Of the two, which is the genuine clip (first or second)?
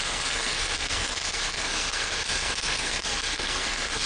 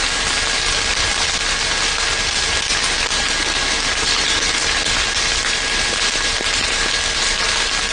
second